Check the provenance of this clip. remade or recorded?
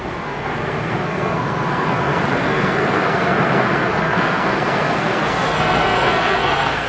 remade